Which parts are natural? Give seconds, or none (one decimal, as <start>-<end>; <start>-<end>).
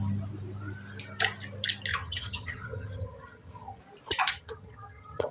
0.0-1.9; 3.8-4.3